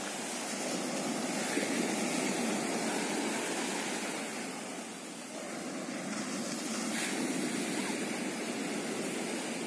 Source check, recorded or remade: recorded